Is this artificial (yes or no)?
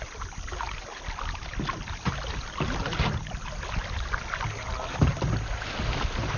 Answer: no